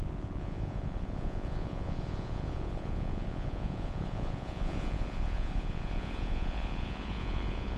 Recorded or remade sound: remade